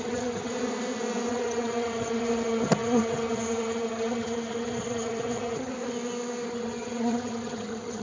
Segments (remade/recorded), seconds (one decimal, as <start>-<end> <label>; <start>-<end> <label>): 0.0-0.5 remade; 0.5-1.3 recorded; 1.3-5.7 remade; 5.7-6.5 recorded; 6.5-8.0 remade